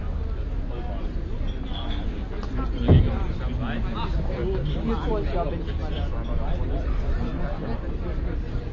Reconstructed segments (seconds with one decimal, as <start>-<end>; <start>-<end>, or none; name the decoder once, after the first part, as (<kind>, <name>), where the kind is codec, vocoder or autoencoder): none